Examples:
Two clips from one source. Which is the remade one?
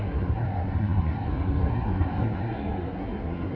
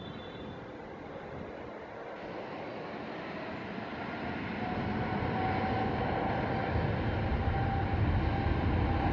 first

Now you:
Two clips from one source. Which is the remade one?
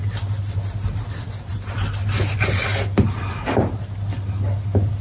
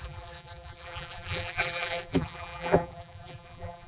second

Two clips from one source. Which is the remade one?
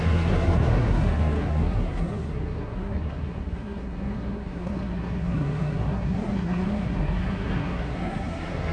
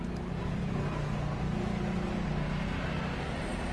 first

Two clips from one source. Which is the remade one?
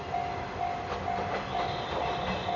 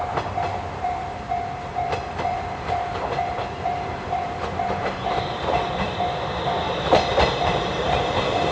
second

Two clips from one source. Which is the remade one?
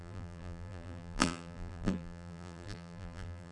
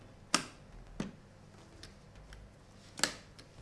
first